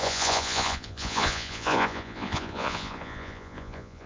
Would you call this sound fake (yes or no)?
yes